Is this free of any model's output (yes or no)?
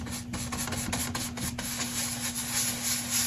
yes